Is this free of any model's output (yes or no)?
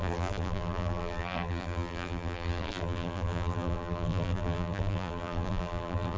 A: no